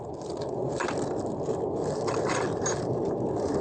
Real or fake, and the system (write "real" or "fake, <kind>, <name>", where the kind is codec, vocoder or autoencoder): real